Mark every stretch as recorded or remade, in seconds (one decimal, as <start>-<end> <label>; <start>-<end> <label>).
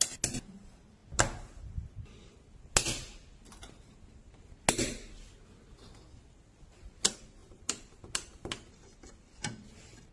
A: 0.0-7.4 recorded; 7.4-8.0 remade; 8.0-10.1 recorded